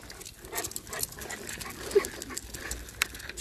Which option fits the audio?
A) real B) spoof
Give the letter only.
A